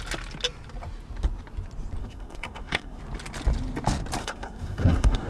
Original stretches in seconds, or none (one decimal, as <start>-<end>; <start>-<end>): 0.0-2.0; 3.0-4.2